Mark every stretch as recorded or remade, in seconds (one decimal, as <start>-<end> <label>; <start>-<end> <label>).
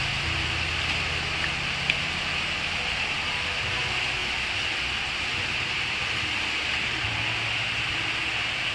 0.0-4.2 recorded; 4.2-5.1 remade; 5.1-8.7 recorded